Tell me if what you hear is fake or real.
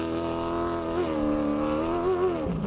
real